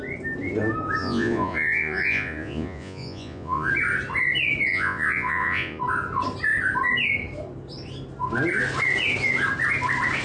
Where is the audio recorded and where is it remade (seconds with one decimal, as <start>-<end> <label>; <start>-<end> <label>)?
0.0-1.0 recorded; 1.0-3.7 remade; 3.7-4.7 recorded; 4.7-5.8 remade; 5.8-10.2 recorded